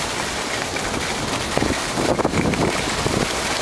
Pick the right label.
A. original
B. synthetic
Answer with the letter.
A